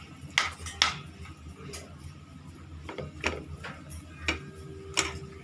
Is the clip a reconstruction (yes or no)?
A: no